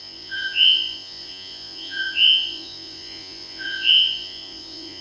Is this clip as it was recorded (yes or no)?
no